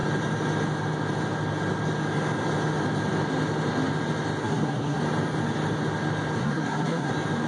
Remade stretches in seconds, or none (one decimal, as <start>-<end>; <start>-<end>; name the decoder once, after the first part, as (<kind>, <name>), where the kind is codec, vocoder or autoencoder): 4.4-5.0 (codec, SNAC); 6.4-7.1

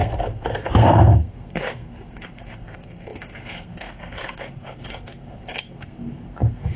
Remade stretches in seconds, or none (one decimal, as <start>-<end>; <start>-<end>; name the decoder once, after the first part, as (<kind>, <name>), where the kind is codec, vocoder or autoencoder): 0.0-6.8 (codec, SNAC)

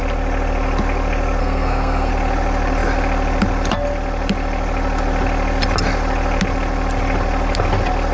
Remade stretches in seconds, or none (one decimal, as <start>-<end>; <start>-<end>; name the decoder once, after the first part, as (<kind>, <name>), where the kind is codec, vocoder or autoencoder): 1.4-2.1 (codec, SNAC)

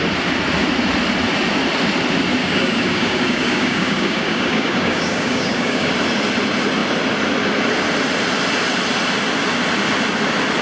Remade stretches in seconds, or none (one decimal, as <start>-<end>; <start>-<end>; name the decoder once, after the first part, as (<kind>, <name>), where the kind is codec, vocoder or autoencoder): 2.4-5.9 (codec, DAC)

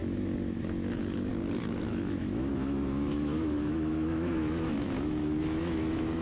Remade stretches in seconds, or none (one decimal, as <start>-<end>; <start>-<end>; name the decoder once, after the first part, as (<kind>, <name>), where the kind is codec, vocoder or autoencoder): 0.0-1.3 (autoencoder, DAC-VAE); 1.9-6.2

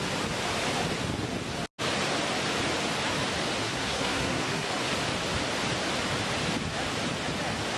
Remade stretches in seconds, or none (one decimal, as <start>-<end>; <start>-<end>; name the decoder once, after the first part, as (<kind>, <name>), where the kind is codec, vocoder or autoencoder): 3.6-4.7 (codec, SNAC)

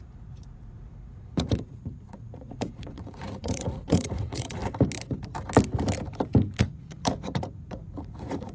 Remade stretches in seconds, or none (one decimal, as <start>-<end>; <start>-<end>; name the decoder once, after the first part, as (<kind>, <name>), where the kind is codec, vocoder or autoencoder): 0.0-4.6 (vocoder, Vocos); 6.6-8.5